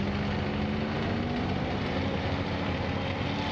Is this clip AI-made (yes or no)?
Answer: no